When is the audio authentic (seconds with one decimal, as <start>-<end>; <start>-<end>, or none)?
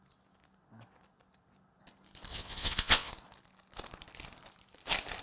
0.0-2.3; 3.1-5.2